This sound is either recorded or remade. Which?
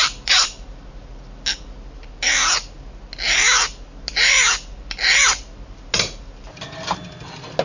recorded